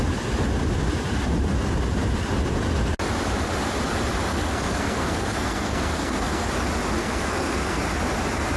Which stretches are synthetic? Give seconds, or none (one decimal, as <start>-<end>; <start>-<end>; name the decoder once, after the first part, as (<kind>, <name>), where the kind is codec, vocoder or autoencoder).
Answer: 4.3-6.5 (codec, SNAC); 7.0-7.8